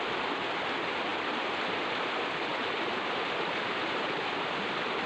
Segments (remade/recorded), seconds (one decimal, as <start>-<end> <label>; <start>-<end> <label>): 0.0-2.5 recorded; 2.5-4.2 remade; 4.2-5.1 recorded